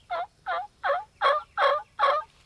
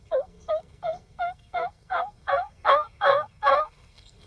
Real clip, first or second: first